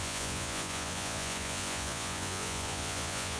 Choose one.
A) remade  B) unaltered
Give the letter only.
A